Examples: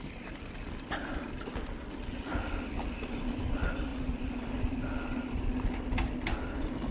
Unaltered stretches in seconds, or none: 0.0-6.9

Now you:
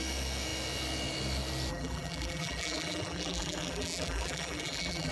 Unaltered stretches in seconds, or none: 0.0-1.7